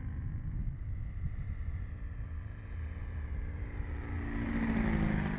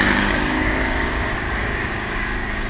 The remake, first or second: second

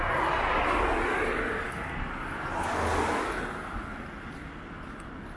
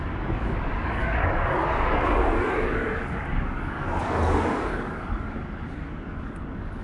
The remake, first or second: second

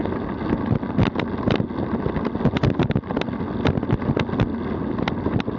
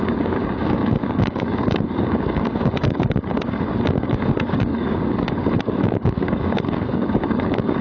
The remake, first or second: second